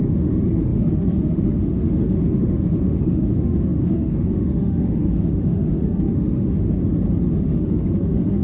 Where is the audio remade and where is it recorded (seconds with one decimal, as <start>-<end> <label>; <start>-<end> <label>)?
0.0-6.8 remade; 6.8-7.4 recorded; 7.4-8.4 remade